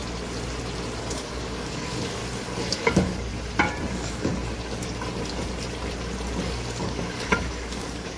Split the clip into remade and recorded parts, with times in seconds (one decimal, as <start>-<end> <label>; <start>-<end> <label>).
0.0-1.0 recorded; 1.0-2.2 remade; 2.2-2.8 recorded; 2.8-3.3 remade; 3.3-3.9 recorded; 3.9-4.3 remade; 4.3-6.8 recorded; 6.8-8.2 remade